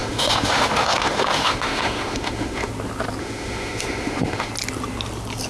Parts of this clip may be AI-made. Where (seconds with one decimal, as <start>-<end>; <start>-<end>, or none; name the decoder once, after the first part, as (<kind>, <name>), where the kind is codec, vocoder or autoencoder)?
0.0-2.7 (autoencoder, DAC-VAE); 3.2-4.5